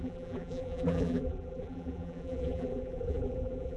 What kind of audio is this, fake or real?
fake